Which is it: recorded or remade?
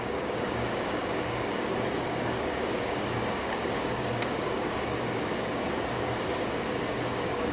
remade